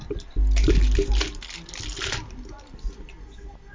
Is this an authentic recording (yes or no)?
yes